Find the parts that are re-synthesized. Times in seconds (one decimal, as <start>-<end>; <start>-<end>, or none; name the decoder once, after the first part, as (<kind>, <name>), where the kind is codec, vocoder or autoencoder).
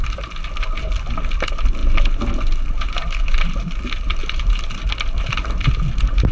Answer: none